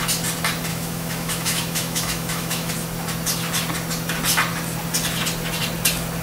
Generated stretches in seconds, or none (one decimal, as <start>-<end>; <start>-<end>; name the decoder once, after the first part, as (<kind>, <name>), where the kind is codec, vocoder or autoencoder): 0.7-2.7 (autoencoder, DAC-VAE)